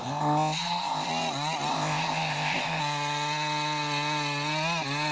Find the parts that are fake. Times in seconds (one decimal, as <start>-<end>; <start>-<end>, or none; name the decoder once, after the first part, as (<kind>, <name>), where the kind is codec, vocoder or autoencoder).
0.0-1.1 (codec, ZipCodec); 1.7-2.8